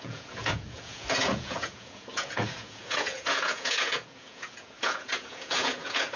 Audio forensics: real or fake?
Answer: fake